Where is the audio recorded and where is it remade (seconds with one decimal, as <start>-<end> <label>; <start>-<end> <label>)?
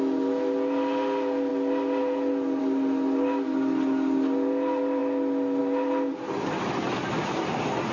0.0-7.9 recorded